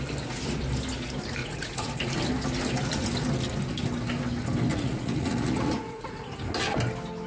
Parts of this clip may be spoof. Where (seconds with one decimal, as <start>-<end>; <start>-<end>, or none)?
1.4-2.2; 4.7-6.3